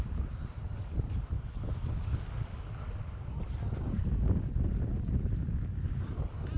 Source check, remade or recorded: recorded